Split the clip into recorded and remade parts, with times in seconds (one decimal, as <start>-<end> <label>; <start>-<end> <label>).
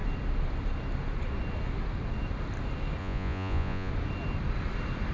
0.0-3.0 recorded; 3.0-3.9 remade; 3.9-5.1 recorded